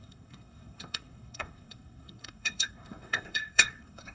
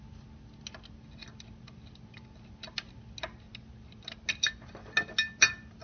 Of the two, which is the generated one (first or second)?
first